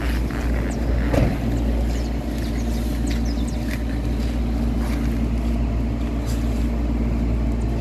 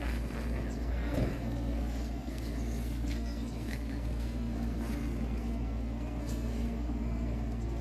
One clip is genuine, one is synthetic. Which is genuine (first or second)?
first